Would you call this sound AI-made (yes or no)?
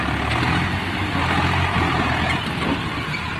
no